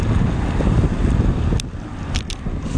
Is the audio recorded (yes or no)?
yes